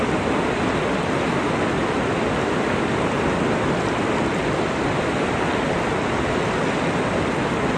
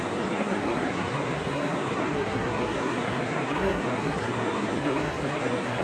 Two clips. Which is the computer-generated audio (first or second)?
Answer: second